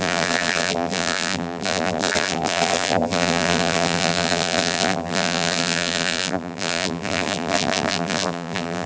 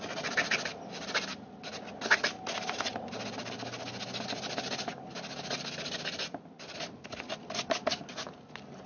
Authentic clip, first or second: second